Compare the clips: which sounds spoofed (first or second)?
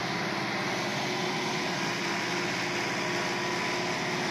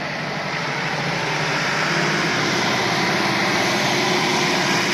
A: second